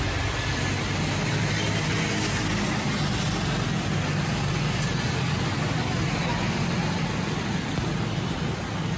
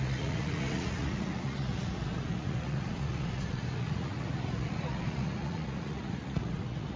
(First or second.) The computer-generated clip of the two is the second